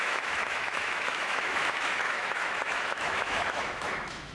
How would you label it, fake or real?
fake